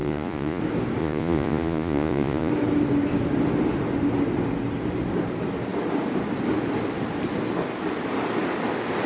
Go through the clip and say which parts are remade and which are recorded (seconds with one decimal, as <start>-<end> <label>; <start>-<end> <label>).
0.0-0.6 remade; 0.6-1.0 recorded; 1.0-2.5 remade; 2.5-9.1 recorded